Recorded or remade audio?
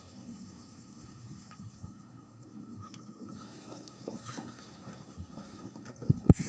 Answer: remade